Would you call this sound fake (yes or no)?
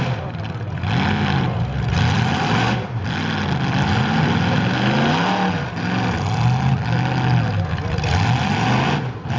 no